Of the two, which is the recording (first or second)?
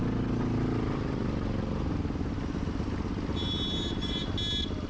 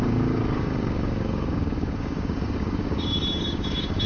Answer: first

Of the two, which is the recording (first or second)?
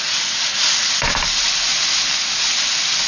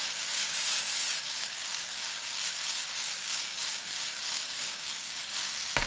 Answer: first